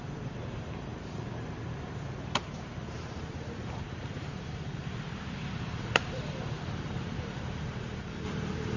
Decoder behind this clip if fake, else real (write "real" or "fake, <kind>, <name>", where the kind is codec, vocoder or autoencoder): fake, vocoder, BigVGAN v2